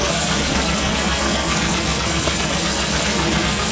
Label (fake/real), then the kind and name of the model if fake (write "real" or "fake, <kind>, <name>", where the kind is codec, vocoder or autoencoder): fake, codec, SNAC